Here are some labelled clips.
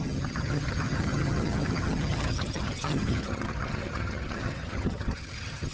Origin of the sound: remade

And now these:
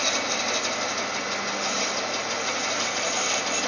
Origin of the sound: recorded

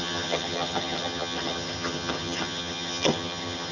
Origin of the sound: remade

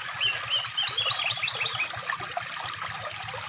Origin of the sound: recorded